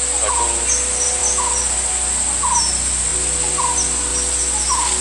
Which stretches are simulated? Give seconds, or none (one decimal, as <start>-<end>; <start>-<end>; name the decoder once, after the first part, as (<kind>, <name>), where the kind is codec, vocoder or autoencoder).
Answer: none